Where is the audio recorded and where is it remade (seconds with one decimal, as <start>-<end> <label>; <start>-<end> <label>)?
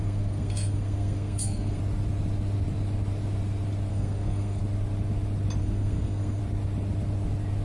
0.0-1.8 remade; 1.8-3.9 recorded; 3.9-4.6 remade; 4.6-5.6 recorded; 5.6-6.4 remade; 6.4-7.6 recorded